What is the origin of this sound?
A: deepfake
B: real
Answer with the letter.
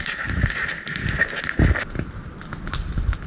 B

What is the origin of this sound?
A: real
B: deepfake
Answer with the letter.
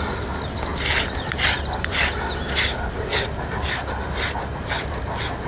A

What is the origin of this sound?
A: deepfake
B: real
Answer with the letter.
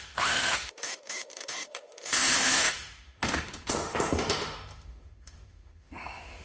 A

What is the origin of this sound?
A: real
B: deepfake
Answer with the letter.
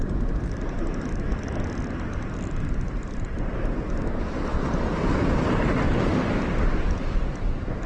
A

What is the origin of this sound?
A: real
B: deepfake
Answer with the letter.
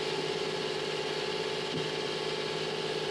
A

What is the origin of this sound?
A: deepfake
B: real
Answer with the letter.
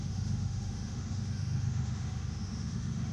A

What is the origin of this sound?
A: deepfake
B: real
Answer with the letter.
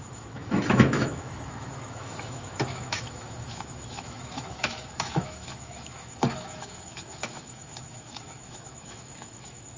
A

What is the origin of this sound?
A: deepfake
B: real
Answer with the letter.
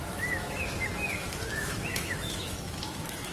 A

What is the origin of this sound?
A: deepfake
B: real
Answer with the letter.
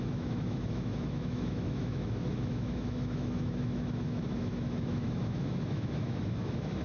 A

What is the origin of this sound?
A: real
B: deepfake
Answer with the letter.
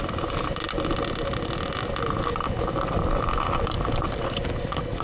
A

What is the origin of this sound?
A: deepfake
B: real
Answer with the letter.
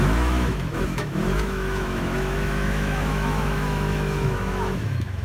A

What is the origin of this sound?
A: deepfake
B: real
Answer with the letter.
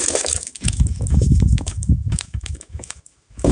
A